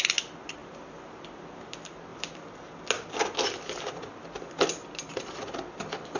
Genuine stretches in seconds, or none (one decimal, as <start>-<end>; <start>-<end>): 0.0-6.2